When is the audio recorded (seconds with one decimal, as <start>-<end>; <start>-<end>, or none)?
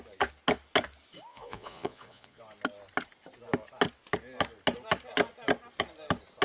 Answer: 0.0-1.3; 2.4-6.4